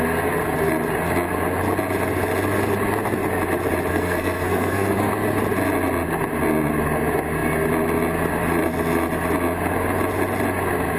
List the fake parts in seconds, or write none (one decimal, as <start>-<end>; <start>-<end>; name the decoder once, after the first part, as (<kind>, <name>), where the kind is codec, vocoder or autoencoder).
3.9-5.1 (codec, SNAC)